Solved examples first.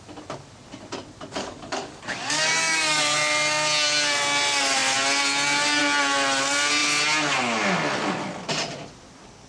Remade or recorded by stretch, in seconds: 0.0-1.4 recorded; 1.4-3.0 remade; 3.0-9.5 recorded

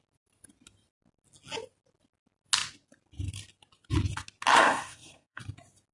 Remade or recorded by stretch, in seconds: 0.0-4.5 recorded; 4.5-5.4 remade; 5.4-5.9 recorded

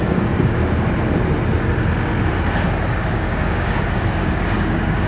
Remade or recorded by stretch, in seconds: 0.0-0.6 remade; 0.6-2.9 recorded; 2.9-5.1 remade

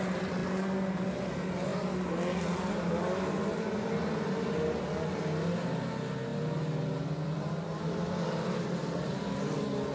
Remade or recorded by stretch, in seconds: 0.0-9.9 recorded

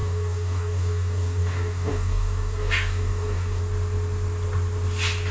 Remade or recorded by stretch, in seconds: 0.0-3.6 remade; 3.6-5.3 recorded

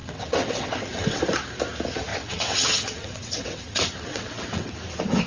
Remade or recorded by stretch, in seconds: 0.0-1.2 remade; 1.2-2.1 recorded; 2.1-4.7 remade; 4.7-5.3 recorded

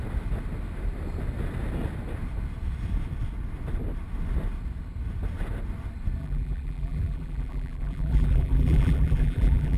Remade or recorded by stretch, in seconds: 0.0-6.2 recorded; 6.2-9.8 remade